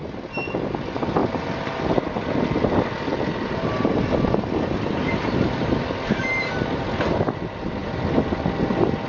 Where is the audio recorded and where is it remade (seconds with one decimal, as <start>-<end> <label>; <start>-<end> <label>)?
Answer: 0.0-3.1 remade; 3.1-4.9 recorded; 4.9-9.1 remade